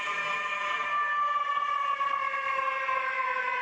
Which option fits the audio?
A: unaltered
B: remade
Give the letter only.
A